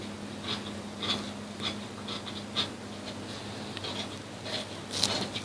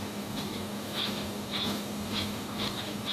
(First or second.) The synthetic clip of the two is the second